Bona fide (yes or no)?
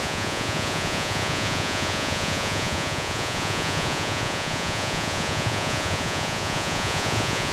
no